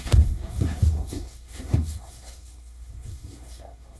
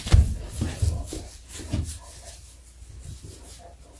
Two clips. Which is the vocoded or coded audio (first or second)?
first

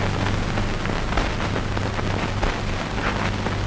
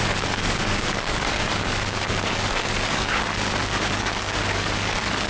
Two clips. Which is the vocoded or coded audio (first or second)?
second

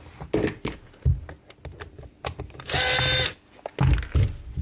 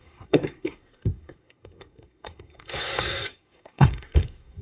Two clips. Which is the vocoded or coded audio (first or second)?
second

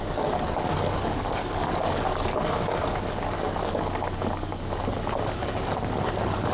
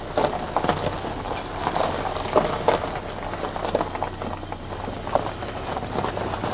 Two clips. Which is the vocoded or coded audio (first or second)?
first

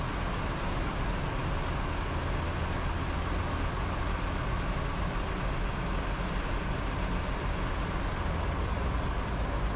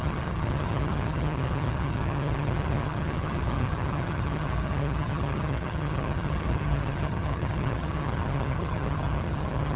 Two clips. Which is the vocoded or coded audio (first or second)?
second